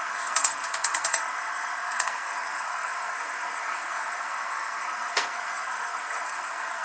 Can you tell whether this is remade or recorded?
remade